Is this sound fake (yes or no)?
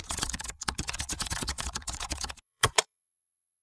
yes